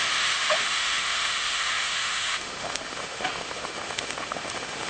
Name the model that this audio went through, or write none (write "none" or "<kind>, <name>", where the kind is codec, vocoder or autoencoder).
autoencoder, DAC-VAE